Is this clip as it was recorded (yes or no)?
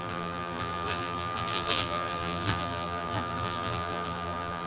no